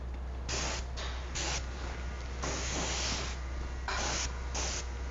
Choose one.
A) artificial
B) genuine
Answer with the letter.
B